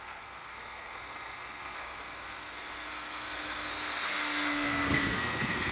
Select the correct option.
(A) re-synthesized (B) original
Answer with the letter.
A